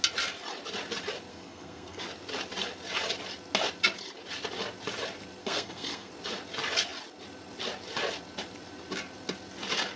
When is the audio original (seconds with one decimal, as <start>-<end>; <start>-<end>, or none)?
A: 0.0-1.3; 2.0-5.4; 6.1-10.0